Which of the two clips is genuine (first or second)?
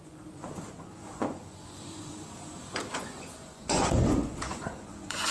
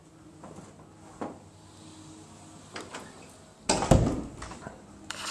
second